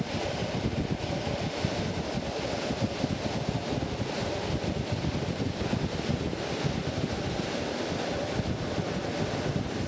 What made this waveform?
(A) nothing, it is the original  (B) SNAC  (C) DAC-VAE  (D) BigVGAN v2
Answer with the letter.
A